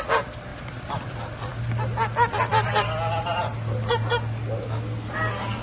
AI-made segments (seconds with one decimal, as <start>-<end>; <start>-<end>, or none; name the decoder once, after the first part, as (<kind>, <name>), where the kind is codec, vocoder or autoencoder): 0.5-1.7 (vocoder, BigVGAN v2); 2.5-3.9